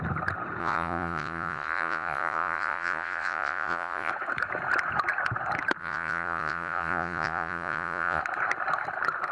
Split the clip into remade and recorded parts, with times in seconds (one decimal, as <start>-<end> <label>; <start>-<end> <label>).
0.0-0.6 recorded; 0.6-4.1 remade; 4.1-5.8 recorded; 5.8-8.2 remade; 8.2-9.3 recorded